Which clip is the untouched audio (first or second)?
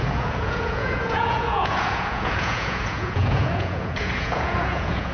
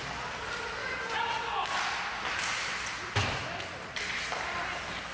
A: second